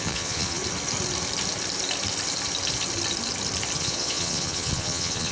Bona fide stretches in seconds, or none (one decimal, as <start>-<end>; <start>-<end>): 0.6-3.8